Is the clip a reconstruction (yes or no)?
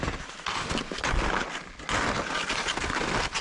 no